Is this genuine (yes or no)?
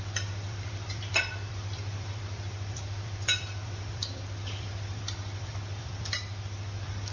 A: no